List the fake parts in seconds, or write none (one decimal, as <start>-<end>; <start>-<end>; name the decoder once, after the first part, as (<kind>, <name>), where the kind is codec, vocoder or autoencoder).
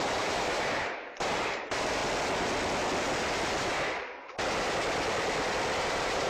0.0-2.0 (vocoder, BigVGAN v2); 5.8-6.3